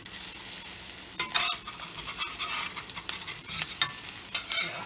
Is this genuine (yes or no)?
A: yes